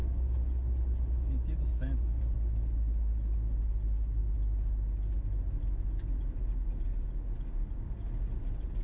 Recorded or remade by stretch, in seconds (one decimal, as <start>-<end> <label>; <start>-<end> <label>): 0.0-8.8 recorded